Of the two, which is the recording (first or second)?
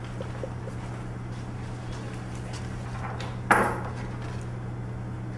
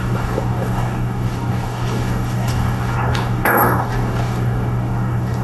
first